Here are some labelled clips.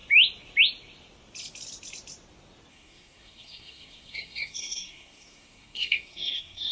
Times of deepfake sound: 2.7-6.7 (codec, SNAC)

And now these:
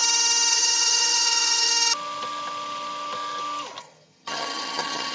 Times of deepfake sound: 0.5-1.7 (vocoder, HiFi-GAN); 3.8-5.1

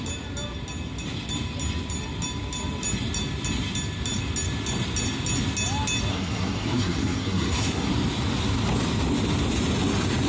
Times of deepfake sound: 6.1-7.9 (codec, SNAC)

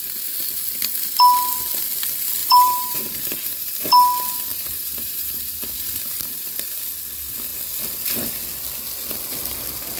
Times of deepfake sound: 2.4-3.7 (vocoder, BigVGAN v2); 4.5-6.8

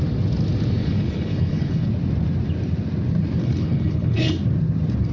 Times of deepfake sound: 0.8-1.9 (codec, HILCodec); 3.4-4.3

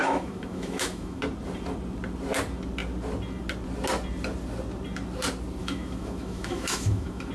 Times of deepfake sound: 0.0-1.2 (autoencoder, DAC-VAE); 5.6-7.3